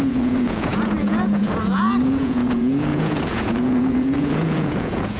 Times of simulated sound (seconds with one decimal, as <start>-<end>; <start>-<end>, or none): 0.0-5.2